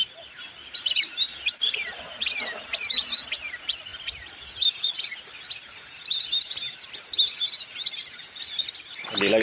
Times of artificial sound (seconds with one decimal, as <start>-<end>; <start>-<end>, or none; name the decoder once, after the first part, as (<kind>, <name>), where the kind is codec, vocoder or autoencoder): none

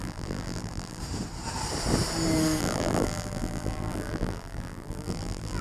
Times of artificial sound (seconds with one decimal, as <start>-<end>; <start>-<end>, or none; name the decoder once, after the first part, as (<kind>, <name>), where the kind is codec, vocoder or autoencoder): 0.0-1.0 (vocoder, BigVGAN v2); 2.6-5.6

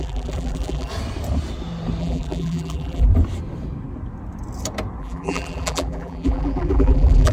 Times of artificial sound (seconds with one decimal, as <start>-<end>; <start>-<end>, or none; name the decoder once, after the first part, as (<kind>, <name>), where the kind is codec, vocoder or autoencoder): 0.0-0.9 (vocoder, BigVGAN v2); 2.0-3.1; 5.0-7.3

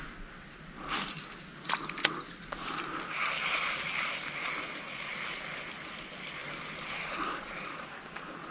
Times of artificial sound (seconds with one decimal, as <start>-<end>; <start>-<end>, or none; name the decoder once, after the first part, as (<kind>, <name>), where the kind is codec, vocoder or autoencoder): none